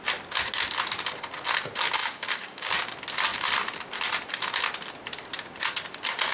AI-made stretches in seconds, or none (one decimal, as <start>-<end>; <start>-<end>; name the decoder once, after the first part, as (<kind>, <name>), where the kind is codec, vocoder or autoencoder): 2.0-2.7 (codec, DAC)